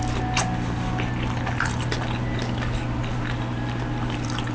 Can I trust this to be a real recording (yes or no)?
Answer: yes